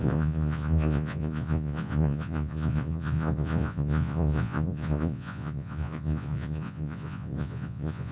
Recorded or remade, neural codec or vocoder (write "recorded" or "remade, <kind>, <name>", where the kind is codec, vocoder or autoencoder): remade, vocoder, Vocos